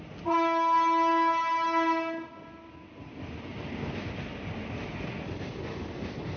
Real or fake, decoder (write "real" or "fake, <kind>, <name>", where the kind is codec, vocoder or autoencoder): real